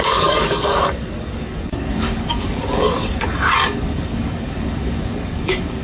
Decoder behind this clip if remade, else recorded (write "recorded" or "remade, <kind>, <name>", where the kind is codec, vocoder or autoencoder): remade, codec, DAC